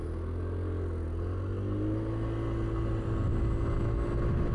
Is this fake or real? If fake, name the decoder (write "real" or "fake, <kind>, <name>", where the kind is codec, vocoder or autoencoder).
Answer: real